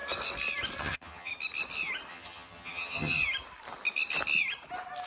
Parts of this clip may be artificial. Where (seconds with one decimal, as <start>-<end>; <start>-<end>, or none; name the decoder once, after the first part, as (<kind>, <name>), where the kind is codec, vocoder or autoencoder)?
0.8-1.3 (vocoder, HiFi-GAN); 2.1-3.2